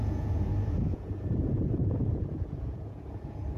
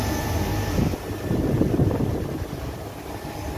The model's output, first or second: first